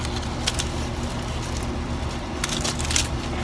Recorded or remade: recorded